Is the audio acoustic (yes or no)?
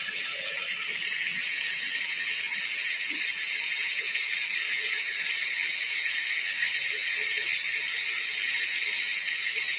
yes